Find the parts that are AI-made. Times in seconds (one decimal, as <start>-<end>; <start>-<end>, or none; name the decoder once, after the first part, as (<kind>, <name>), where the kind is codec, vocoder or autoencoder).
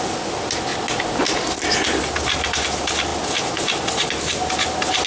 none